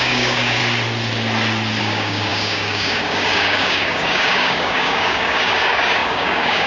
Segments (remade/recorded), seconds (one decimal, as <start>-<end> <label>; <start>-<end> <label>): 0.0-0.6 remade; 0.6-1.8 recorded; 1.8-6.7 remade